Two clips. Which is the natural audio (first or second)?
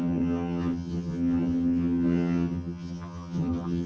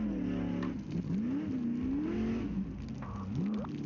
second